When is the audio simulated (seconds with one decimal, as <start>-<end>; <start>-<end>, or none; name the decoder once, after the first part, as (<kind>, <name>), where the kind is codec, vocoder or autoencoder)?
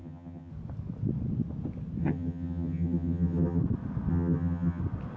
0.0-0.5 (vocoder, HiFi-GAN); 2.0-3.6; 4.1-4.8